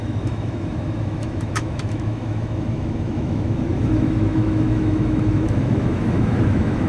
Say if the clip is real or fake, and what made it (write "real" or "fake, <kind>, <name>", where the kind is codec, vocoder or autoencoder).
fake, autoencoder, DAC-VAE